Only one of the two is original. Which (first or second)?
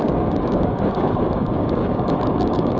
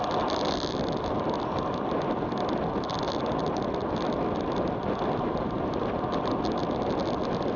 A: second